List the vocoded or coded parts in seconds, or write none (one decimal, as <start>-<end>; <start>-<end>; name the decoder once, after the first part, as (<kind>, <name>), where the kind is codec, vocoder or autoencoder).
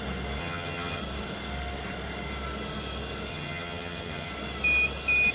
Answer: 0.4-1.0 (vocoder, HiFi-GAN); 3.3-4.3